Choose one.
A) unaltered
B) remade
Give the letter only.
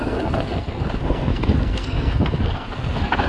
B